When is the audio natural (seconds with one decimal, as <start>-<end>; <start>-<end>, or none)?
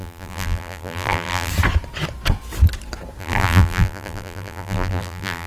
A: 1.5-3.2